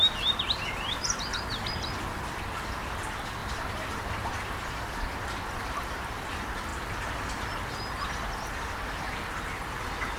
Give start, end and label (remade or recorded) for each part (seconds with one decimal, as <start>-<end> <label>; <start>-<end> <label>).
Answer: 0.0-3.4 recorded; 3.4-4.1 remade; 4.1-10.2 recorded